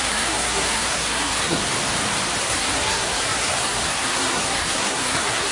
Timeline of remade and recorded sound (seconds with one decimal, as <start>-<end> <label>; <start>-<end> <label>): 0.0-1.6 remade; 1.6-2.4 recorded; 2.4-5.5 remade